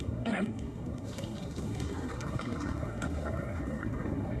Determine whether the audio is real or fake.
fake